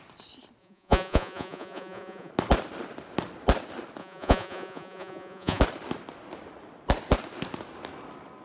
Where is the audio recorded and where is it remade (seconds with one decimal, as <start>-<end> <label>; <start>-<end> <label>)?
0.0-0.6 recorded; 0.6-2.3 remade; 2.3-4.0 recorded; 4.0-5.6 remade; 5.6-8.4 recorded